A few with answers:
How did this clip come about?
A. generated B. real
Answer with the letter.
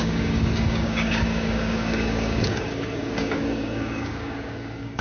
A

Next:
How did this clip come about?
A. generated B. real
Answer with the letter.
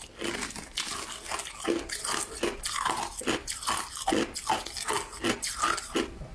B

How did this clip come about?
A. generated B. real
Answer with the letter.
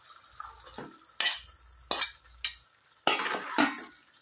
B